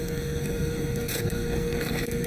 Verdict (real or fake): fake